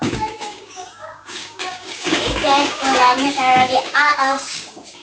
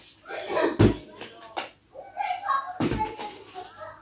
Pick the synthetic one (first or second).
first